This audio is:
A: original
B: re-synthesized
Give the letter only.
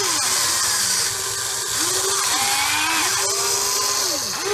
A